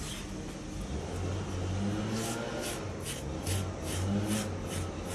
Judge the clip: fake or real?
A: real